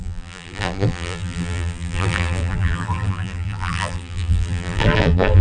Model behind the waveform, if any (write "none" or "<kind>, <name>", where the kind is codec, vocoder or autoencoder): vocoder, BigVGAN v2